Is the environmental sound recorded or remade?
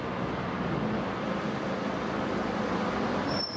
recorded